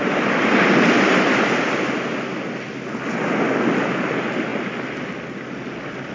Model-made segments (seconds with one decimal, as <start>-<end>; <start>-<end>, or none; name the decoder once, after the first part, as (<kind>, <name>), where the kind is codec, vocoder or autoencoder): none